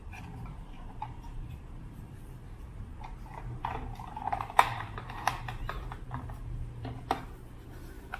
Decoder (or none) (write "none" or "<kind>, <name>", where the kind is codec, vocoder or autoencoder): vocoder, BigVGAN v2